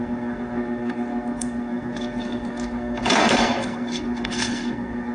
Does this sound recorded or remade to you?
remade